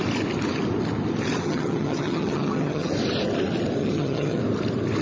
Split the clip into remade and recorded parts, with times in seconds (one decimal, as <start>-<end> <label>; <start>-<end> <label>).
0.0-1.4 recorded; 1.4-2.9 remade; 2.9-3.8 recorded; 3.8-4.4 remade; 4.4-5.0 recorded